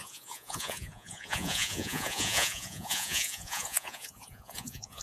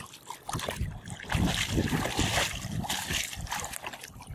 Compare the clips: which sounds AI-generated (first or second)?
first